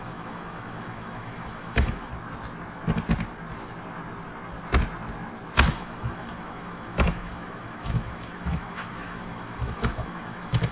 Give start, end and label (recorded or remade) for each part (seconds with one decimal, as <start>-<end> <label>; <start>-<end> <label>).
0.0-2.1 remade; 2.1-5.7 recorded; 5.7-10.7 remade